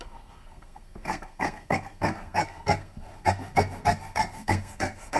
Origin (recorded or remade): remade